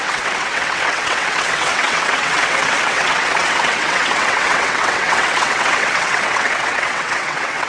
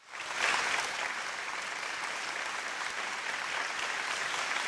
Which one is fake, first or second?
first